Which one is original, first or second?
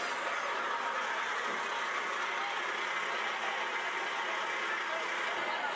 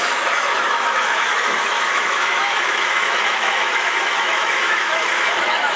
first